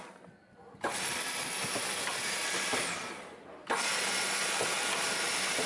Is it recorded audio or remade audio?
recorded